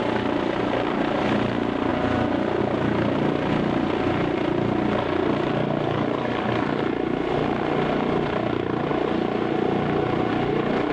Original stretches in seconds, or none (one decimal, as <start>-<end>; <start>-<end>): 0.0-5.6; 6.8-10.9